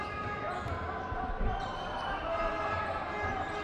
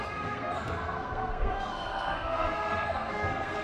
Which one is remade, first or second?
second